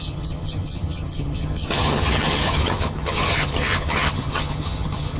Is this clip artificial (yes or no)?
yes